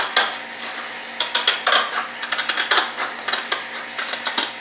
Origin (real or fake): real